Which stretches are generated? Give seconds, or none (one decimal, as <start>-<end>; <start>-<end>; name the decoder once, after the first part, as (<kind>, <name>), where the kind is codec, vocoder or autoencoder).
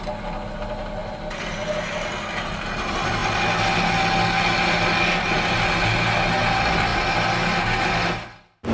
none